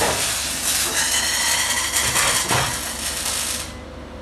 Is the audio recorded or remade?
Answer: recorded